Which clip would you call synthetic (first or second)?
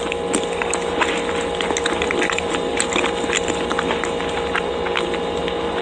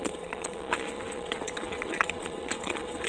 second